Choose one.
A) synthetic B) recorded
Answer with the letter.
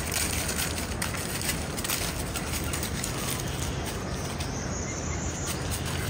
B